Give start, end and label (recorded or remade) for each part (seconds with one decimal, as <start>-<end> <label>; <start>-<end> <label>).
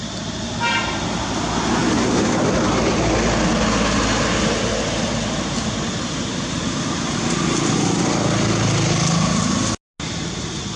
0.0-10.8 recorded